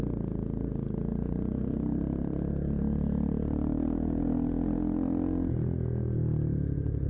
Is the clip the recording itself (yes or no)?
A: yes